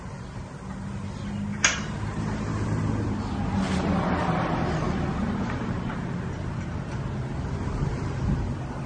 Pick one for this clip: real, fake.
real